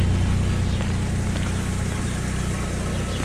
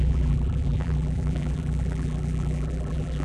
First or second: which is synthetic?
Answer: second